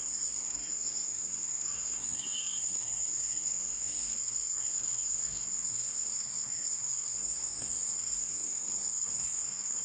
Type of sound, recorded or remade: remade